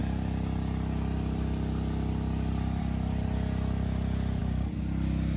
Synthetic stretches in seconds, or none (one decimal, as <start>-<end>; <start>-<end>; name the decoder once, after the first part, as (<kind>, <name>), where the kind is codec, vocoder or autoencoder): none